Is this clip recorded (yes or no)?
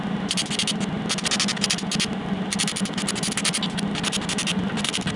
yes